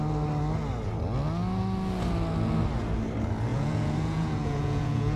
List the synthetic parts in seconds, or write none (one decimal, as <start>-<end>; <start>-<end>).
3.5-5.2